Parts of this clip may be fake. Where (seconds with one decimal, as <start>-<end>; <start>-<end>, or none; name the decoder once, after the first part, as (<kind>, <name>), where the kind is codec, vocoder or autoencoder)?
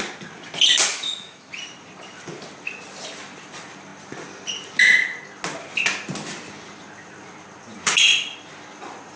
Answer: 0.9-1.5 (autoencoder, DAC-VAE)